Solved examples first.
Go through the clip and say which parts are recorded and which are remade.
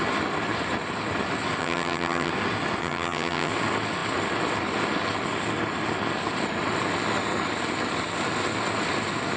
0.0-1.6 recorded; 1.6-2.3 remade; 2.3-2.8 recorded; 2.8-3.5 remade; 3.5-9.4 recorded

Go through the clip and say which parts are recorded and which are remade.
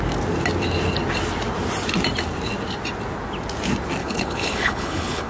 0.0-4.0 recorded; 4.0-5.3 remade